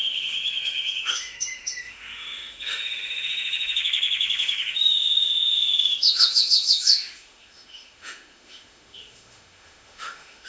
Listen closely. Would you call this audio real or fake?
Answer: fake